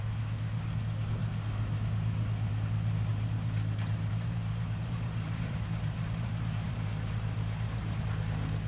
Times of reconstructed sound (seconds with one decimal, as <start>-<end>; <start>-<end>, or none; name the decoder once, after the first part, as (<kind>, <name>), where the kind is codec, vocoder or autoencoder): 3.1-6.9 (vocoder, BigVGAN v2)